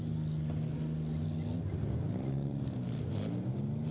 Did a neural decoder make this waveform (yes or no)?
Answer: no